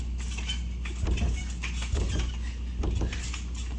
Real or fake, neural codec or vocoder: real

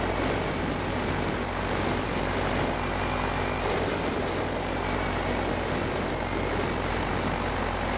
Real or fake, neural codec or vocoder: real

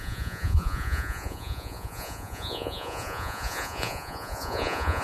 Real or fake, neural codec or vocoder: fake, vocoder, Vocos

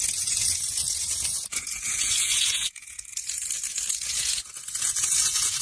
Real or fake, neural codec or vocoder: fake, vocoder, Vocos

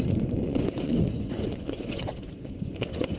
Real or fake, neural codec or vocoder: fake, vocoder, Vocos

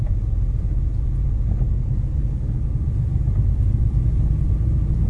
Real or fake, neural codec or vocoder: fake, vocoder, Vocos